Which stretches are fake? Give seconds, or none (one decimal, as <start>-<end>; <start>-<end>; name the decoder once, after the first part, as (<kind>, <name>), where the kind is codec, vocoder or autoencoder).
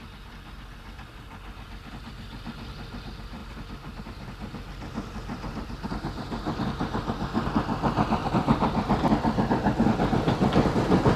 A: 8.2-9.4 (vocoder, BigVGAN v2)